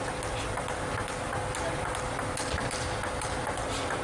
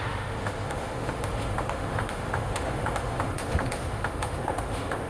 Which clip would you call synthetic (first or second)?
second